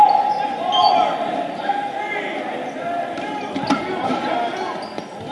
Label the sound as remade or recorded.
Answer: recorded